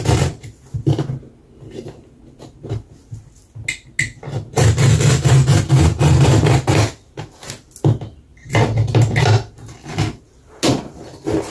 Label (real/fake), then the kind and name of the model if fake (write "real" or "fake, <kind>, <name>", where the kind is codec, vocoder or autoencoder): real